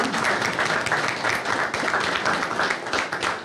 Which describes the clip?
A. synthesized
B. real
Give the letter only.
B